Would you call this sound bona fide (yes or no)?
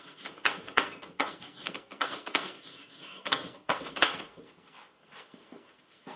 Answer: no